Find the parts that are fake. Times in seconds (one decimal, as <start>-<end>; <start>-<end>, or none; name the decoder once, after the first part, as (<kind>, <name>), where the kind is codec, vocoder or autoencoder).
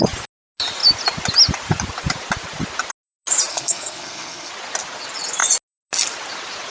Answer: 3.5-4.5 (codec, SNAC)